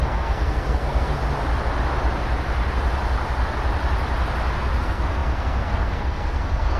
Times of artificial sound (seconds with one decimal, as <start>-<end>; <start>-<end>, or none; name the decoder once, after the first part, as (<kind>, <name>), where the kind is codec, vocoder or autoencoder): 0.0-1.2 (codec, SNAC); 4.8-6.8